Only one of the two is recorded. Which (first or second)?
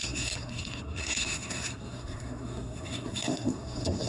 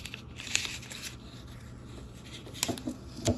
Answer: second